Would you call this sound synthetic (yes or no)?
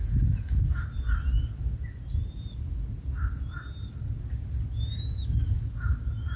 no